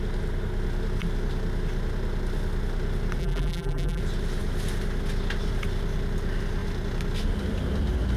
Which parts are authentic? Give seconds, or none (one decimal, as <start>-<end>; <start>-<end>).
0.0-3.2; 4.0-8.2

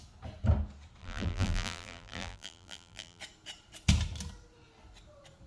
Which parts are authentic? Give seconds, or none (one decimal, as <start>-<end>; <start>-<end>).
0.0-1.0; 3.2-5.5

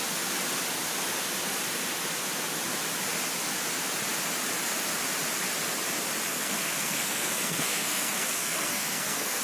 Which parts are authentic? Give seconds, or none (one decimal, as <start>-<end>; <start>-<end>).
0.0-6.3

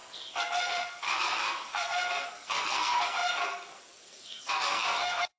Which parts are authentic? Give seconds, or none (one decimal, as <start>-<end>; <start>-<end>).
none

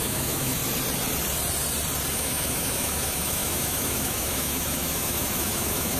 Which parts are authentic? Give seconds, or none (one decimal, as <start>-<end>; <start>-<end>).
0.6-2.1

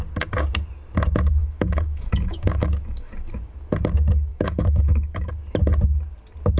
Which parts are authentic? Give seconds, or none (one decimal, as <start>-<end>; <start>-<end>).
0.0-1.4; 3.1-4.3; 5.3-6.6